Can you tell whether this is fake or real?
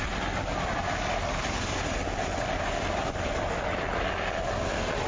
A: real